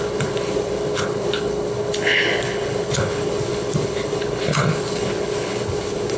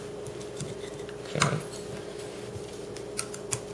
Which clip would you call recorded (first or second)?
second